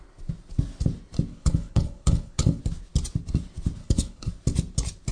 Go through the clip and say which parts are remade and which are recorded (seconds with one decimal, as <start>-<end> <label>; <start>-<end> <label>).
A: 0.0-1.3 recorded; 1.3-2.6 remade; 2.6-3.8 recorded; 3.8-4.3 remade; 4.3-5.1 recorded